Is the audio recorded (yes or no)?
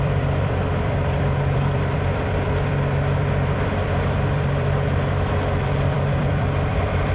no